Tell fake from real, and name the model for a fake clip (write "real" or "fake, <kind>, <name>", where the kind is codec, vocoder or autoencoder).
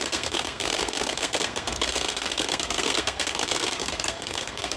fake, codec, SNAC